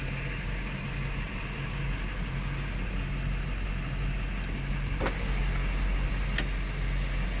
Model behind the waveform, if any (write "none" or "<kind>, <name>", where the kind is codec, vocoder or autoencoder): none